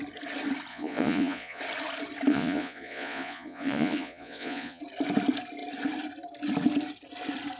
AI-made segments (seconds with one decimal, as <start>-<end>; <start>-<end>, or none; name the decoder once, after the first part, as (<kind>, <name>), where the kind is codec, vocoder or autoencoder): 0.7-1.6 (vocoder, Vocos); 2.3-4.8